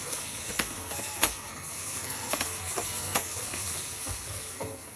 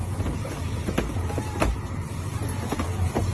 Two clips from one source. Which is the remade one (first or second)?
first